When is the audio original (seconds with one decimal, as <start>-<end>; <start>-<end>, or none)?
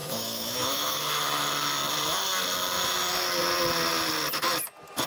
1.0-5.1